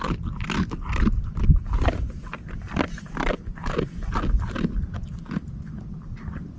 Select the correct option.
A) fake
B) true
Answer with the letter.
B